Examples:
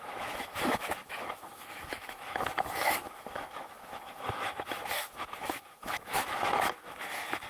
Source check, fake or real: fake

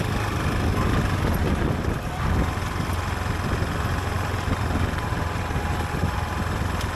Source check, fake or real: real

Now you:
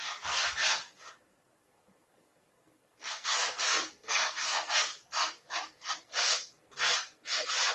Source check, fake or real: fake